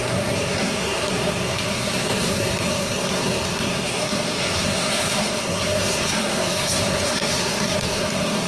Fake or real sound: fake